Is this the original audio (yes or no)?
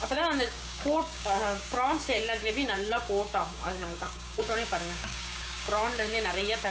no